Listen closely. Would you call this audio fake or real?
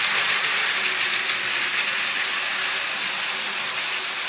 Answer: real